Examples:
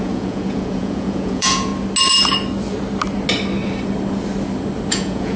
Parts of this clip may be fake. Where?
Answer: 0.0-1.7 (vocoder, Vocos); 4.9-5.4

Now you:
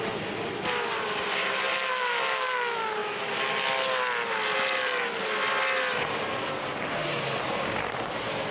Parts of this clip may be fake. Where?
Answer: none

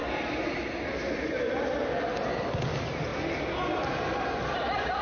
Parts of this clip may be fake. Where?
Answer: none

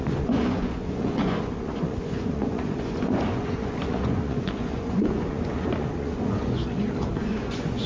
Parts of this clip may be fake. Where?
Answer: 0.0-6.6 (vocoder, Vocos); 7.2-7.9

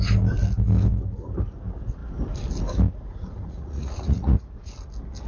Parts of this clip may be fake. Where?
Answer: 3.1-4.7 (vocoder, Vocos)